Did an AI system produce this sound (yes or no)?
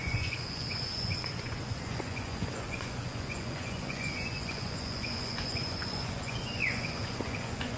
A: yes